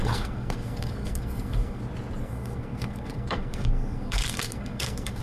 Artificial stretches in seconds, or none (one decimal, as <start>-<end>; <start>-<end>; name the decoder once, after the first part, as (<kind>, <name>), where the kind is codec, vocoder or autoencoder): 0.0-1.8 (codec, SNAC); 2.2-5.2